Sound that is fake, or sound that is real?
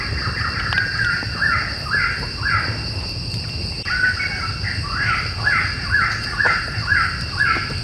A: real